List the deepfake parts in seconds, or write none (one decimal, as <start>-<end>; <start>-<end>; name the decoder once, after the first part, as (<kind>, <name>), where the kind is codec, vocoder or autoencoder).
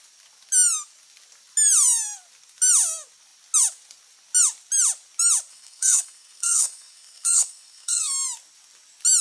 5.5-8.1 (codec, SNAC)